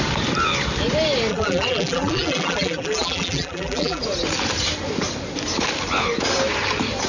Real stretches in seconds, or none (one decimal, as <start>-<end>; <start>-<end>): 0.0-1.3; 4.0-7.1